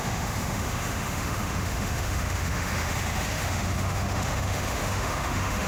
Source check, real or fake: fake